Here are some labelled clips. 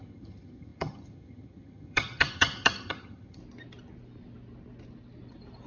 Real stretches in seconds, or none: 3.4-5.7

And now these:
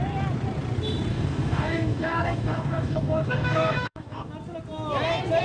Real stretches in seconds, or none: 0.0-1.1; 4.3-5.4

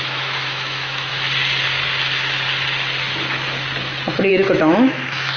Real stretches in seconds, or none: 1.1-4.3